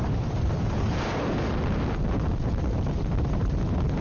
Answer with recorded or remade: remade